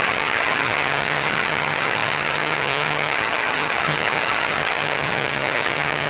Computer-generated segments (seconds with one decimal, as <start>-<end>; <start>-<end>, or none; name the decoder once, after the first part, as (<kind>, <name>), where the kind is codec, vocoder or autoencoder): 0.0-6.1 (vocoder, HiFi-GAN)

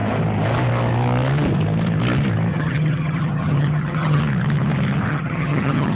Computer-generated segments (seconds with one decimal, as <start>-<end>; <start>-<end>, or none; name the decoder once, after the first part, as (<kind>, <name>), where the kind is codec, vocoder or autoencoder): 2.5-4.2 (vocoder, HiFi-GAN); 5.1-6.0

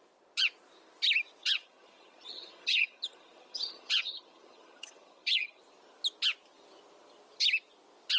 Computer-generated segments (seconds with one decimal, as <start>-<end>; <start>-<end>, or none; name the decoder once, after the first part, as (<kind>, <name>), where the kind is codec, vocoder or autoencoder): 1.4-5.6 (vocoder, HiFi-GAN)

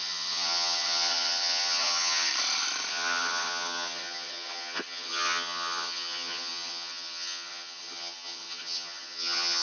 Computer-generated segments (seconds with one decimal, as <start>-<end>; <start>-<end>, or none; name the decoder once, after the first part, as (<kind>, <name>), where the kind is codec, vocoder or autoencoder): 0.0-2.3 (vocoder, HiFi-GAN); 2.9-9.6

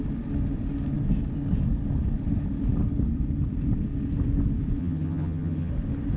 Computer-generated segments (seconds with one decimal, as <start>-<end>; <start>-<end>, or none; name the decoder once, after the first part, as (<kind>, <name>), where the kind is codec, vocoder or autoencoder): 4.8-5.7 (vocoder, HiFi-GAN)

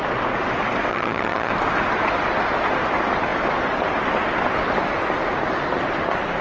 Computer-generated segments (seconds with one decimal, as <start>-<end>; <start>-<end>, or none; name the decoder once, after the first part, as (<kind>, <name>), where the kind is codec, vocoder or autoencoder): 0.9-1.5 (vocoder, HiFi-GAN)

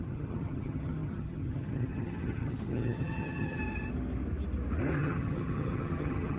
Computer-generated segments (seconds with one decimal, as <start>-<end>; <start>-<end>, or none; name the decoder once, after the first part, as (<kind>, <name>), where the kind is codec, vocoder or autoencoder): 0.0-3.6 (vocoder, HiFi-GAN); 5.0-6.4